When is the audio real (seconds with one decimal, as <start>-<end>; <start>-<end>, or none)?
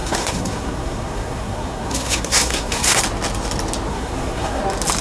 3.0-3.9; 4.6-5.0